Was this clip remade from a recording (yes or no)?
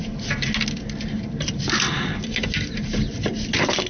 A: no